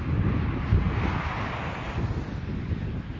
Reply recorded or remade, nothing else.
recorded